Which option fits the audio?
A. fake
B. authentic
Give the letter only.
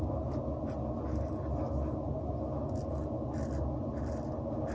B